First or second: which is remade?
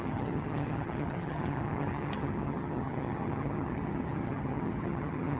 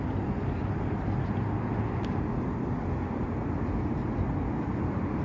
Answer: first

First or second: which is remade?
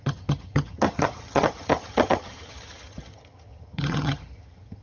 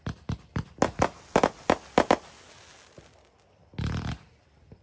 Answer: first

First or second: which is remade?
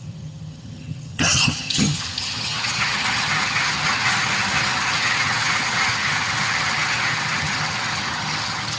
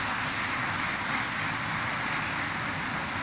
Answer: first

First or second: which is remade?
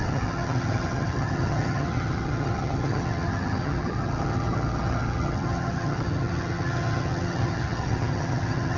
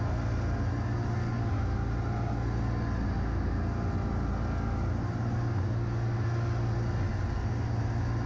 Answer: first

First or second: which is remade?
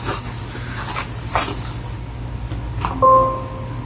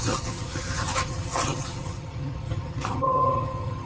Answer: second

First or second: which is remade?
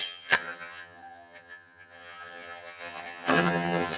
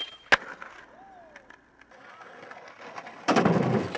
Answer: first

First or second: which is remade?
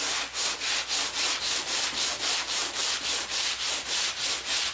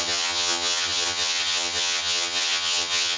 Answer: second